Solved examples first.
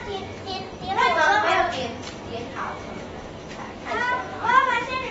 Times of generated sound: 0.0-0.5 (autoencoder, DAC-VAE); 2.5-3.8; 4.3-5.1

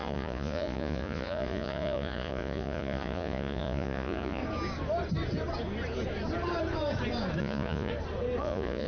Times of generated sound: 0.0-4.4 (vocoder, Vocos); 7.4-7.9; 8.4-8.9